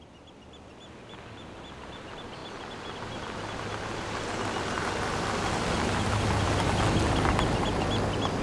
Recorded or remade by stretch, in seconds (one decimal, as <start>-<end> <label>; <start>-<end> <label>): 0.0-8.4 recorded